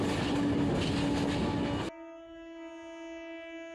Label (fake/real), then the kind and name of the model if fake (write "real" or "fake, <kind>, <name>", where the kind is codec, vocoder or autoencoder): real